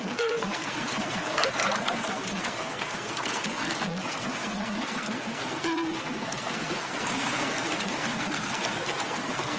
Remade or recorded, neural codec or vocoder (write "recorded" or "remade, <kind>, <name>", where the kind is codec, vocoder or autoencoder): remade, codec, SNAC